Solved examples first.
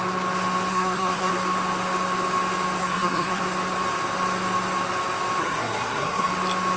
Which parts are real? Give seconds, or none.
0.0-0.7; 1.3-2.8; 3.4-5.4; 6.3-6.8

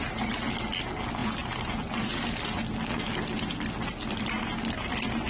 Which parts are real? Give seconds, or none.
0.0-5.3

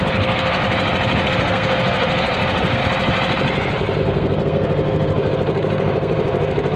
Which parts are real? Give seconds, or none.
0.6-1.3; 2.8-4.0